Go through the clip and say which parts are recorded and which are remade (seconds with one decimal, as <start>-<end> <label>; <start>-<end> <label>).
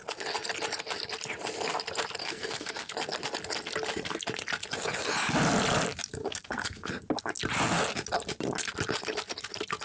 0.0-2.2 recorded; 2.2-2.9 remade; 2.9-6.2 recorded; 6.2-6.9 remade; 6.9-9.8 recorded